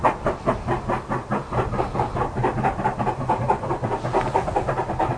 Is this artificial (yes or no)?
no